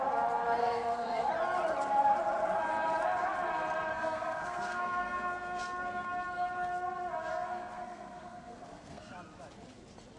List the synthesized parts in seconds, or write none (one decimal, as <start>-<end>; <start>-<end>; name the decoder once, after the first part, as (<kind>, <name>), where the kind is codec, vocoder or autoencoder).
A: 0.6-1.3 (codec, SNAC); 3.9-5.6; 7.3-9.1